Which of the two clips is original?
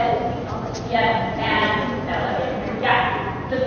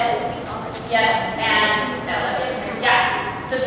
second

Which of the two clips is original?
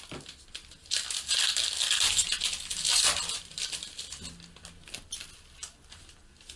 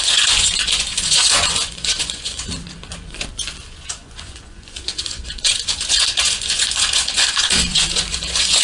first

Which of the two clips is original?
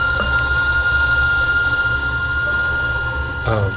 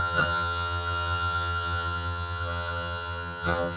first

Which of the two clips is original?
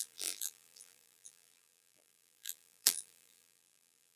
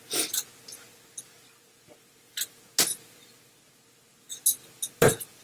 second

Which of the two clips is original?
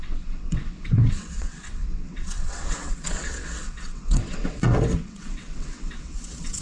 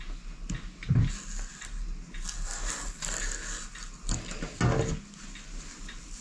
second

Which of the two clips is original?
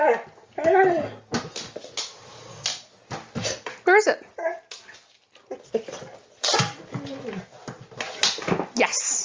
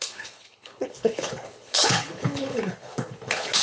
first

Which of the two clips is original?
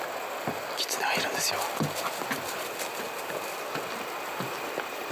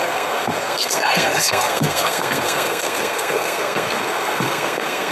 first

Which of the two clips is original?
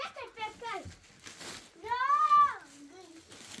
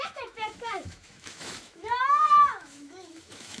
first